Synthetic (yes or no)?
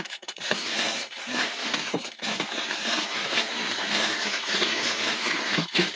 yes